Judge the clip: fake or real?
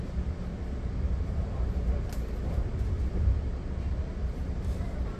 fake